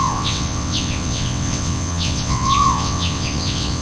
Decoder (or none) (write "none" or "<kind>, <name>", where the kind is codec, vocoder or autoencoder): vocoder, WaveNeXt